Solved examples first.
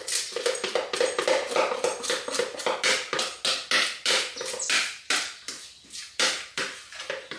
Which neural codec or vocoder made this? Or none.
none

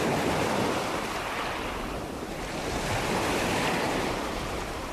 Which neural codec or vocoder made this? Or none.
none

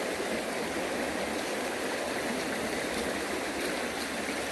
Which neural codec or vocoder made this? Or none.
none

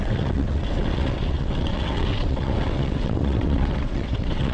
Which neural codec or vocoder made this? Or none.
vocoder, WaveNeXt